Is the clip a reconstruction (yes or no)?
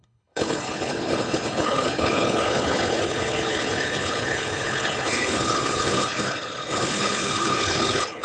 yes